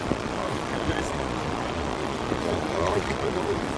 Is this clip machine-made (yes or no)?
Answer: yes